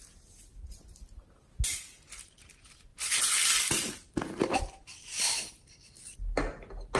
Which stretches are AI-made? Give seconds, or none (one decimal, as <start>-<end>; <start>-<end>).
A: none